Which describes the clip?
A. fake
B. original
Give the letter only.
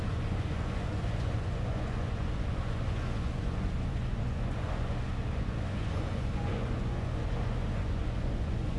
A